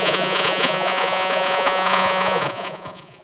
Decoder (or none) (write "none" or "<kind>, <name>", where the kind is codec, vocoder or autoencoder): vocoder, Vocos